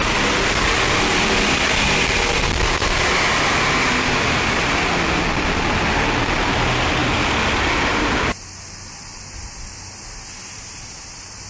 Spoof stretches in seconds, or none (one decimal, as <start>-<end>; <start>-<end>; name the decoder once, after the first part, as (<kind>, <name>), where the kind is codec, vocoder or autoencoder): none